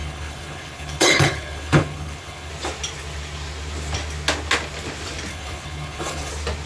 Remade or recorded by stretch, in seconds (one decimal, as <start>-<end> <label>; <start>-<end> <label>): 0.0-2.5 remade; 2.5-5.3 recorded; 5.3-6.3 remade; 6.3-6.7 recorded